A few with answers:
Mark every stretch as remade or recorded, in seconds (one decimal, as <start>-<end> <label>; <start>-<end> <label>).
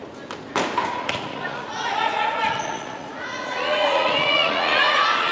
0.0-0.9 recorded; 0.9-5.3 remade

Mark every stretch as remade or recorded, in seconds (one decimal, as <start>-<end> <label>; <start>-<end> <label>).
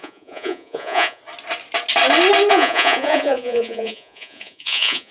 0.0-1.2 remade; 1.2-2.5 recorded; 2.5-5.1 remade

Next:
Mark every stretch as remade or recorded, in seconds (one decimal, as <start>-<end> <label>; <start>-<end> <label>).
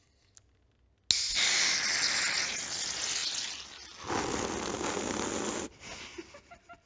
0.0-6.9 recorded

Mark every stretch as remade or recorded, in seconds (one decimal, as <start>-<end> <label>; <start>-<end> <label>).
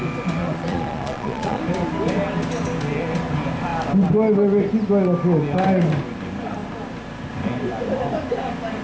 0.0-0.4 recorded; 0.4-1.6 remade; 1.6-8.8 recorded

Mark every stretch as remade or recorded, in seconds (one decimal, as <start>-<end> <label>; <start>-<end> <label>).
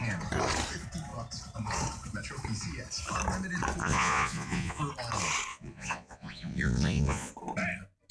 0.0-3.8 recorded; 3.8-4.8 remade; 4.8-5.5 recorded; 5.5-7.3 remade; 7.3-8.1 recorded